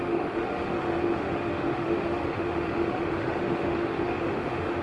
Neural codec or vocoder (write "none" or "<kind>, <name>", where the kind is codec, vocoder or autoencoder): autoencoder, DAC-VAE